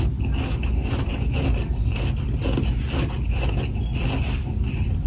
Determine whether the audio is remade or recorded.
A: recorded